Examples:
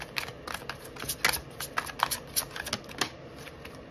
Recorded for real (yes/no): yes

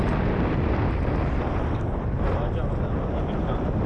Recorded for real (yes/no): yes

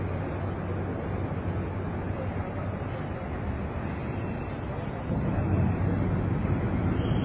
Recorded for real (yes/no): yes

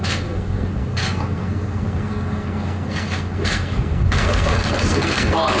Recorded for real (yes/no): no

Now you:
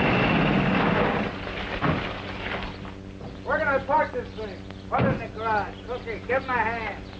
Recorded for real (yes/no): yes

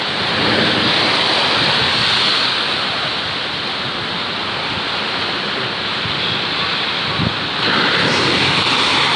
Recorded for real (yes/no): yes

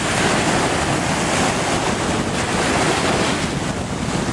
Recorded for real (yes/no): yes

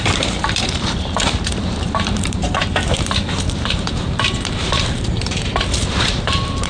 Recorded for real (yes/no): no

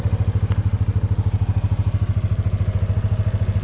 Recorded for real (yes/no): yes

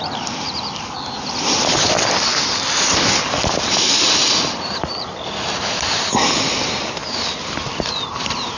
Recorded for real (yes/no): yes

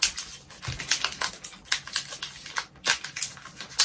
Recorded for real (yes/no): yes